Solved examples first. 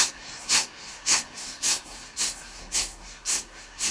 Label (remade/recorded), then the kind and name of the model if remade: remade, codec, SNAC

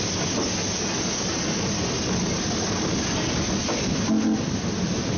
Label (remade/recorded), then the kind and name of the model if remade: recorded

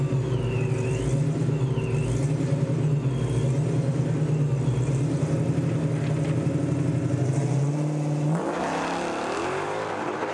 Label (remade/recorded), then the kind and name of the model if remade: recorded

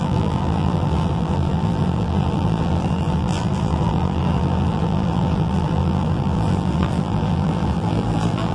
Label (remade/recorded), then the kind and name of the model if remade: remade, vocoder, BigVGAN v2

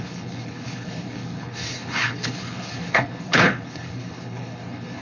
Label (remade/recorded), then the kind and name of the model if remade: remade, codec, HILCodec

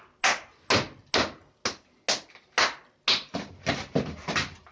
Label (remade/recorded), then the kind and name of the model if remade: recorded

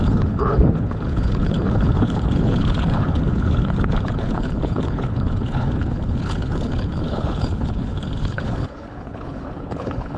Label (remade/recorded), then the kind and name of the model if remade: remade, codec, HILCodec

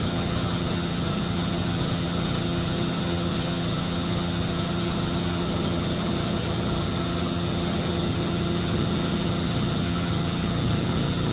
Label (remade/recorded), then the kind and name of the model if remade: remade, vocoder, HiFi-GAN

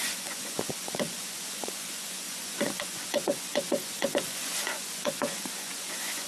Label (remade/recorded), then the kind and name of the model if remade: remade, vocoder, Vocos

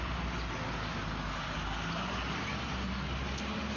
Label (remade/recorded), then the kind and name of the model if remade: recorded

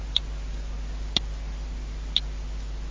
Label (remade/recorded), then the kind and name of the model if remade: recorded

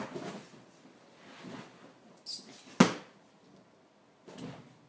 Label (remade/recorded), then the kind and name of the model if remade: recorded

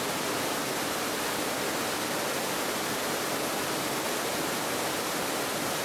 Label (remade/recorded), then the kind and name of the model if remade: recorded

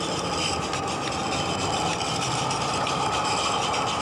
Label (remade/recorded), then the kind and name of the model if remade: recorded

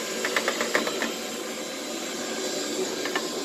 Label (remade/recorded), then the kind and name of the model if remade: recorded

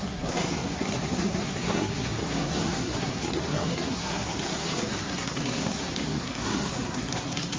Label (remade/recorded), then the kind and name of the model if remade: remade, codec, SNAC